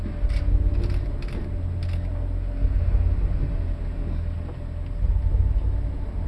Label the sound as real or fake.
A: real